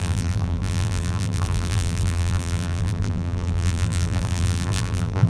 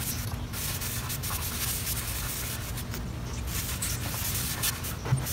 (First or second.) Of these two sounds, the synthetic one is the first